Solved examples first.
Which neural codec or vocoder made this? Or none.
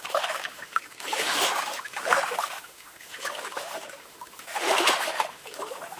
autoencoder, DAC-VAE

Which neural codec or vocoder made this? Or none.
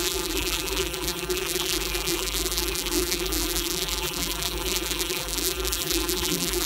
vocoder, BigVGAN v2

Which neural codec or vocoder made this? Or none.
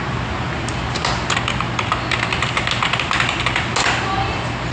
none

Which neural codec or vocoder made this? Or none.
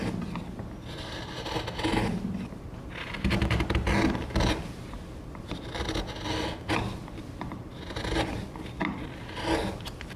none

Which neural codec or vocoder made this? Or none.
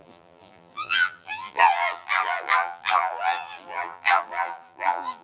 vocoder, BigVGAN v2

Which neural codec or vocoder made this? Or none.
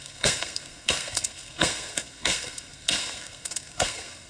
codec, SNAC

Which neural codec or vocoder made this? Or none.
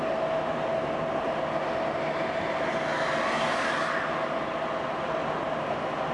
none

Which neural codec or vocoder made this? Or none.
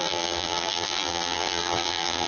vocoder, BigVGAN v2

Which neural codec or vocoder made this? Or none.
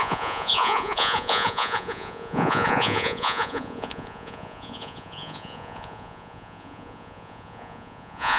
vocoder, Vocos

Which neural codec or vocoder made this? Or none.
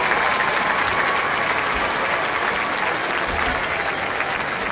none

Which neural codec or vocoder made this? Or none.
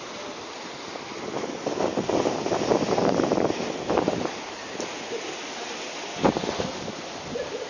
none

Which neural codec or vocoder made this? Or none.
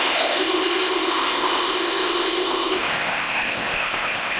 codec, ZipCodec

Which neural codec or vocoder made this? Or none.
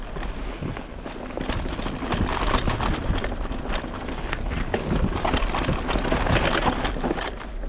none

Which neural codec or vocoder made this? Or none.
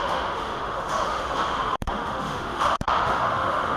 autoencoder, DAC-VAE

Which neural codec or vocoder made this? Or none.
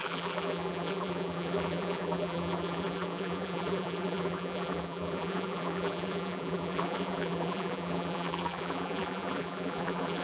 vocoder, BigVGAN v2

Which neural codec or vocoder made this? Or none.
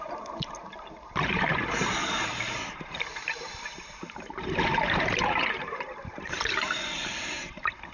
vocoder, BigVGAN v2